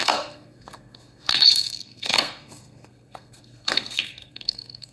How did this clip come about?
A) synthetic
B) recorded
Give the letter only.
A